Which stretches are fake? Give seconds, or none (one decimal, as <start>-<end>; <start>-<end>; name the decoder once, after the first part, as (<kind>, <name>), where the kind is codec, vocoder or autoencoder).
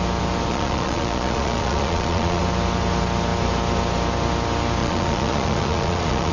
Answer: 0.5-2.4 (vocoder, Vocos); 4.8-6.3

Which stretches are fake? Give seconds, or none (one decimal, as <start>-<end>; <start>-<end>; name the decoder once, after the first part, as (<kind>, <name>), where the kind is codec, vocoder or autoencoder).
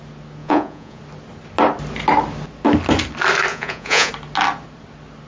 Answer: 0.4-1.0 (vocoder, Vocos); 3.5-4.1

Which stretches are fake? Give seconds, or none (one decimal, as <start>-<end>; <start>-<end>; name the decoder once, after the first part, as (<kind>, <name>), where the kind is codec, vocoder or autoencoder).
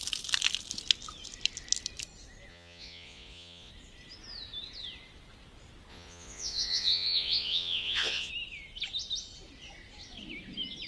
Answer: 2.5-3.7 (vocoder, Vocos); 5.9-8.3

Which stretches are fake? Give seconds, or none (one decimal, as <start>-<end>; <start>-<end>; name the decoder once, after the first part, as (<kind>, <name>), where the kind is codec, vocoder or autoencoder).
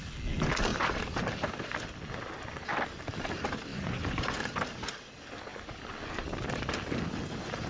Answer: 3.7-4.4 (vocoder, Vocos)